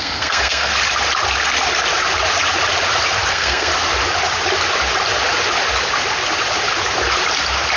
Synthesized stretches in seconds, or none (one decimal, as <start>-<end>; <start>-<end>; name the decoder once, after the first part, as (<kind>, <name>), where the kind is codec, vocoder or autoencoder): 0.0-0.7 (codec, SNAC); 3.3-3.7